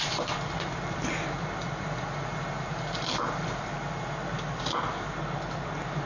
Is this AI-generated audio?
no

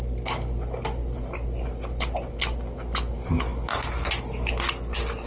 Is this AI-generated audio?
no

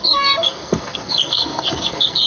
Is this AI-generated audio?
yes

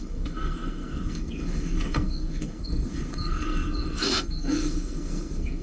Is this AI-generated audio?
yes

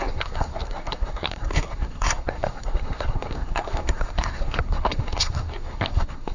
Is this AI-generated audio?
yes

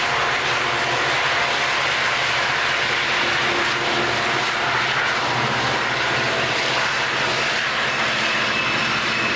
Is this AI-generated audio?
no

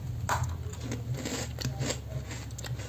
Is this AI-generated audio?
no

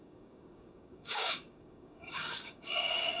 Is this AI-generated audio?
yes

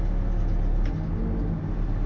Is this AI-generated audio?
no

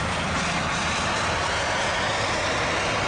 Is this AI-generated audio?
no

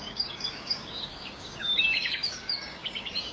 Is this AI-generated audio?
yes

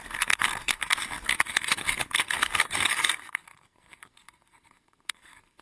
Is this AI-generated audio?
yes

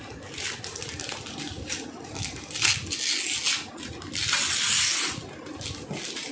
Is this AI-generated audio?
no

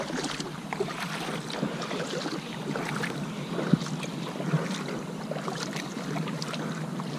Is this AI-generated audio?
no